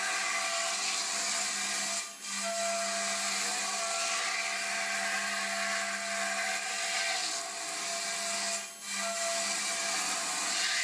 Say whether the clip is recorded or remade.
recorded